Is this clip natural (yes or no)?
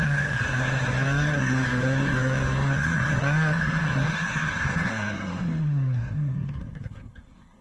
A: no